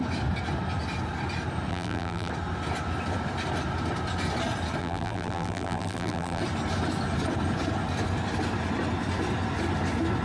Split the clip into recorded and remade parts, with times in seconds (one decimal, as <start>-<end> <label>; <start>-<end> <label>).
0.0-1.7 recorded; 1.7-2.3 remade; 2.3-4.8 recorded; 4.8-6.4 remade; 6.4-10.2 recorded